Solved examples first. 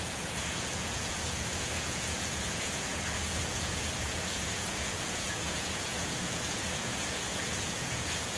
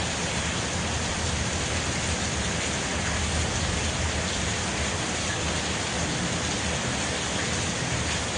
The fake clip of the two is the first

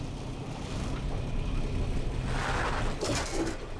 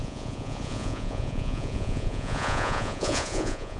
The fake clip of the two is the second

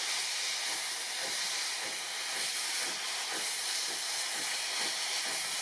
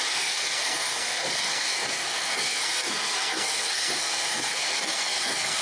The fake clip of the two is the second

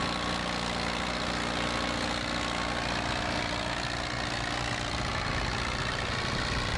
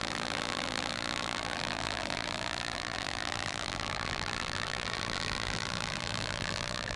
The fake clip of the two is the second